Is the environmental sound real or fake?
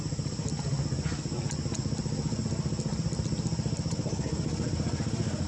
real